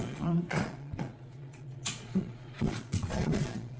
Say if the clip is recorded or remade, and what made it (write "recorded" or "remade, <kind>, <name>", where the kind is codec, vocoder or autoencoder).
remade, vocoder, Vocos